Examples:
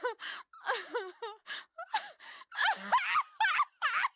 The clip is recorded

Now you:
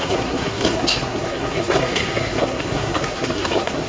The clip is remade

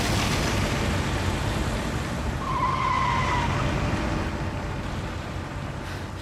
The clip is recorded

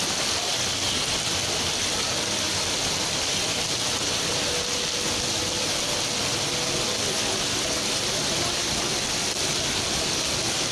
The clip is recorded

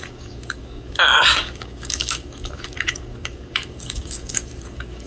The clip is remade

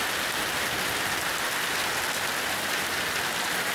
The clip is recorded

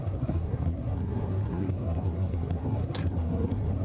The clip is remade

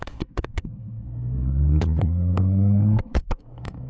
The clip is remade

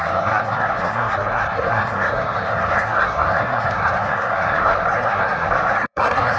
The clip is remade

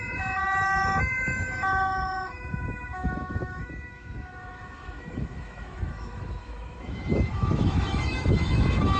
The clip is remade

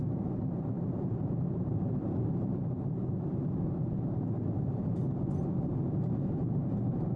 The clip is remade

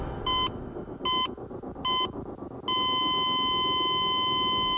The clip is recorded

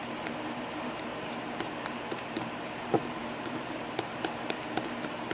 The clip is remade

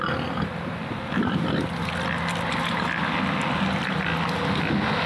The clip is recorded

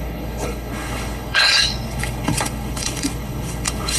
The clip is remade